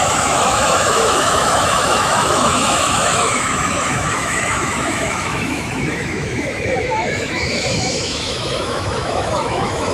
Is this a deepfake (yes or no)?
yes